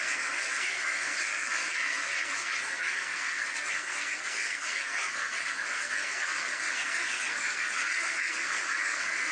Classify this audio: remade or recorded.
remade